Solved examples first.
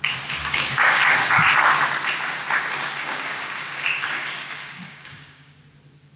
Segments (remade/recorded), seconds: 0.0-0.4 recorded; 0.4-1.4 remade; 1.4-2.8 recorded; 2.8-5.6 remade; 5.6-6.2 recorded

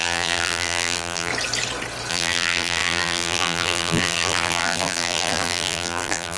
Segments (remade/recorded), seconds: 0.0-1.3 remade; 1.3-2.1 recorded; 2.1-6.4 remade